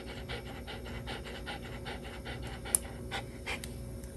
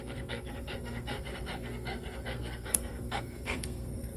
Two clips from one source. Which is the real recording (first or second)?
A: first